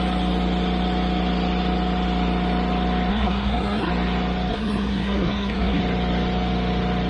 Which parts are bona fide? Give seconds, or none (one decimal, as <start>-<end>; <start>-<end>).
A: 0.0-3.1; 3.9-4.5; 5.8-7.1